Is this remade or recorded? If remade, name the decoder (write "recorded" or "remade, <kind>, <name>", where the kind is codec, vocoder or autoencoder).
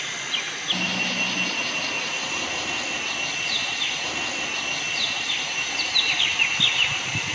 recorded